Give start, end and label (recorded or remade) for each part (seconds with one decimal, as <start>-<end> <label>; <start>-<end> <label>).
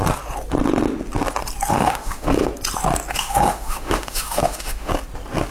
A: 0.0-1.7 recorded; 1.7-2.5 remade; 2.5-3.1 recorded; 3.1-4.9 remade; 4.9-5.5 recorded